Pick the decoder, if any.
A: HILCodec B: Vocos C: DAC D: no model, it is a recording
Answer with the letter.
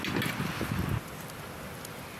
D